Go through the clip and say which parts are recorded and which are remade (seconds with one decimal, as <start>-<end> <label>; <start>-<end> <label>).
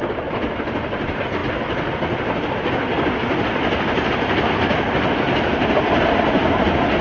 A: 0.0-0.6 remade; 0.6-7.0 recorded